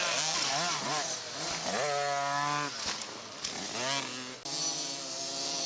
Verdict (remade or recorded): recorded